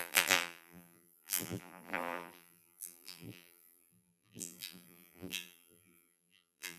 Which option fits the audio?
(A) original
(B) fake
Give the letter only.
B